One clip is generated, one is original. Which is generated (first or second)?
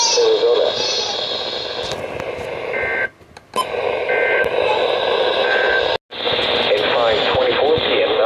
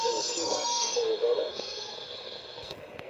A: second